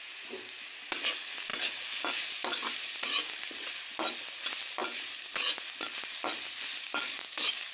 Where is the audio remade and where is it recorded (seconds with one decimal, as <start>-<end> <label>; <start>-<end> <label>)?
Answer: 0.0-6.8 recorded; 6.8-7.7 remade